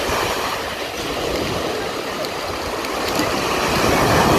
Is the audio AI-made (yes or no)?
no